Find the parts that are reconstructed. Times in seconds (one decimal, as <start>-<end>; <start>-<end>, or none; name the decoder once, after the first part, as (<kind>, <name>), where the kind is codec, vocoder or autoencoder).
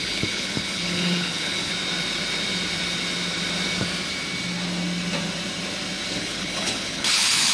0.0-1.7 (codec, HILCodec); 6.2-7.5